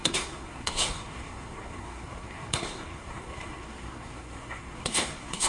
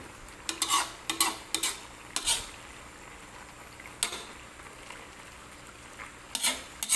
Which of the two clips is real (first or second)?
second